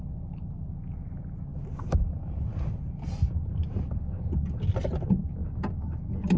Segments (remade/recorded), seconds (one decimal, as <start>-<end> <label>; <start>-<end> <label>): 0.0-6.4 recorded